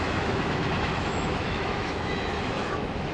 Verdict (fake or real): fake